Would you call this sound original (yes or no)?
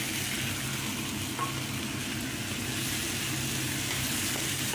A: yes